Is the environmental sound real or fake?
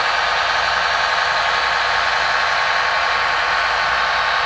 real